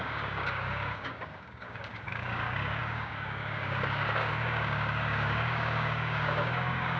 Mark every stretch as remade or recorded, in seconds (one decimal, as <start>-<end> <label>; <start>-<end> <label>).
0.0-7.0 remade